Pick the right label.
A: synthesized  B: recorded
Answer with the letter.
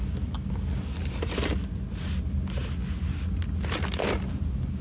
B